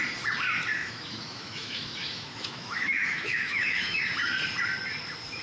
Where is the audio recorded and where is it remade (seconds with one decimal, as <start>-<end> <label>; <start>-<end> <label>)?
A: 0.0-0.8 recorded; 0.8-4.0 remade; 4.0-5.4 recorded

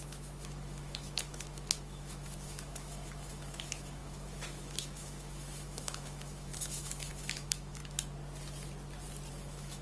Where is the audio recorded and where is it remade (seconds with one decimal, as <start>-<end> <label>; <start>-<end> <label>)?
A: 0.0-7.8 remade; 7.8-9.3 recorded; 9.3-9.8 remade

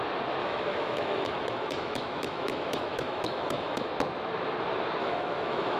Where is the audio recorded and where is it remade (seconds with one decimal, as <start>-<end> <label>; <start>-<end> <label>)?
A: 0.0-0.4 recorded; 0.4-3.9 remade; 3.9-5.0 recorded; 5.0-5.8 remade